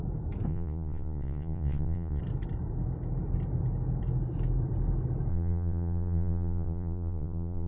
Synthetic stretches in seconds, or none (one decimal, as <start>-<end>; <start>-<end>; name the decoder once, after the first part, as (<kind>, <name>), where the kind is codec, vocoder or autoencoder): 0.5-2.2 (vocoder, Vocos); 5.3-7.7